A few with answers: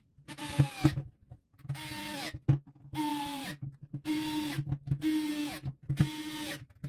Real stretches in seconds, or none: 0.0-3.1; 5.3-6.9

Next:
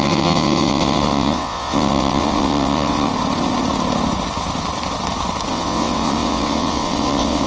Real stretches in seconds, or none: 3.1-5.5

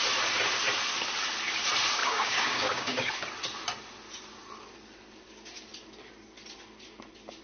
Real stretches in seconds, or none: 0.0-2.0; 3.1-7.4

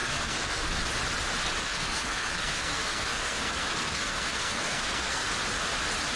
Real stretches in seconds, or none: 0.7-1.6; 5.3-6.2

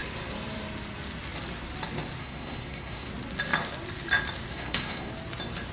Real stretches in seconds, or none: 0.0-2.2; 3.1-4.5; 5.1-5.7

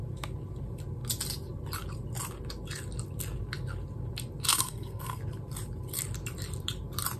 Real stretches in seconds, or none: 0.0-4.5; 5.2-7.2

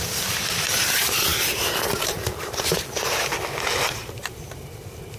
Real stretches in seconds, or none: 3.3-4.2